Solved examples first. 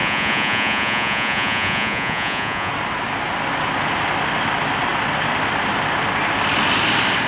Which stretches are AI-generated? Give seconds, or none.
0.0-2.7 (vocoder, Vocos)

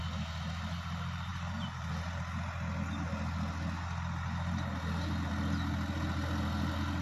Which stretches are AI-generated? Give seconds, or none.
none